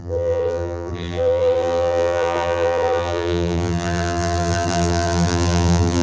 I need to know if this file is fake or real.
fake